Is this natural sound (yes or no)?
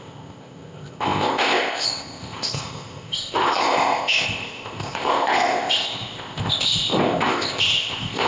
no